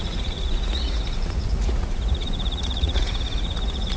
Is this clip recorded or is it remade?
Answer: remade